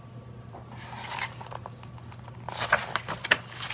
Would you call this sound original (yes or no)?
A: yes